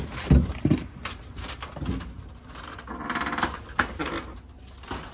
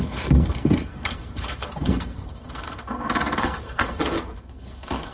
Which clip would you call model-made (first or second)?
second